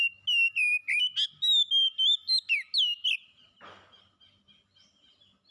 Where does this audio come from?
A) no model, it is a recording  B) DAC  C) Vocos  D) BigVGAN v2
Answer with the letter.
A